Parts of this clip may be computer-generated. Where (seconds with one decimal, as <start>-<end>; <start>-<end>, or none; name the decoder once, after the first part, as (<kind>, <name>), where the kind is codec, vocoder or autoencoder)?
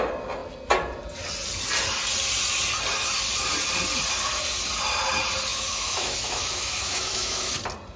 5.5-7.5 (autoencoder, DAC-VAE)